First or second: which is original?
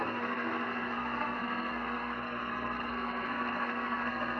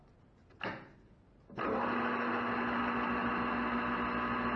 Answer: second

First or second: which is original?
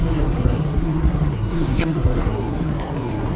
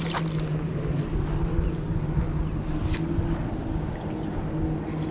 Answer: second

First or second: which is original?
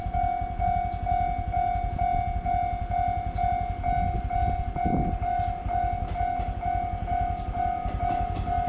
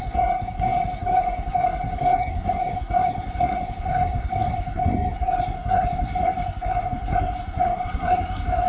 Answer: first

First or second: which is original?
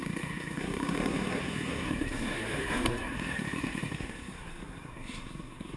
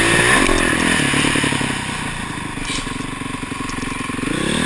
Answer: second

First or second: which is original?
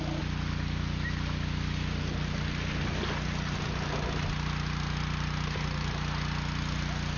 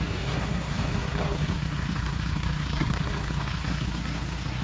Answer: first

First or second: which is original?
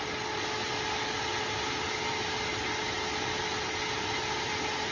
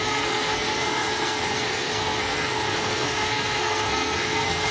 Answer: first